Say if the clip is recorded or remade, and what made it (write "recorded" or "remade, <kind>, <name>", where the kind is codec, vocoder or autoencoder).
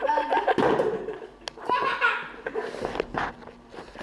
recorded